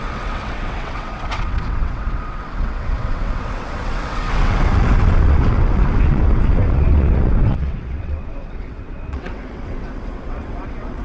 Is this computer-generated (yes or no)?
yes